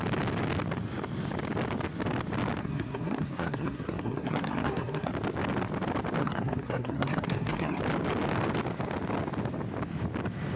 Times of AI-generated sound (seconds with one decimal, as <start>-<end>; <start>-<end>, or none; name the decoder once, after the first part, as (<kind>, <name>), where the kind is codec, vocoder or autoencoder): 2.6-5.1 (codec, SNAC); 6.2-7.8